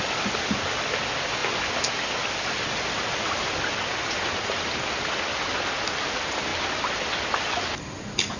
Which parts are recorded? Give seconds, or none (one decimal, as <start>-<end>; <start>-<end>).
0.0-8.4